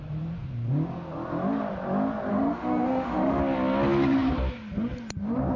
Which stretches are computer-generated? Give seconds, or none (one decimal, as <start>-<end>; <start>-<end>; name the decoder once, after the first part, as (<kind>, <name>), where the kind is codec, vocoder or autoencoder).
2.3-3.4 (autoencoder, DAC-VAE)